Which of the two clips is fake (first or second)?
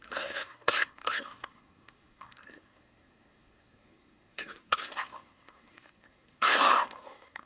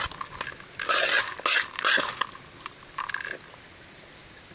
first